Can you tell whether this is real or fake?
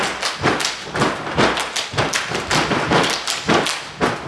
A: real